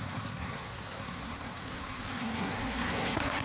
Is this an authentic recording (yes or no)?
no